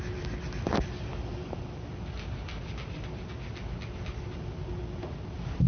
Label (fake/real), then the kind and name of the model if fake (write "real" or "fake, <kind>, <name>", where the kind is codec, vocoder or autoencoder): real